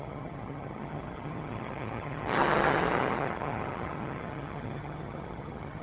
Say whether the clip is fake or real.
fake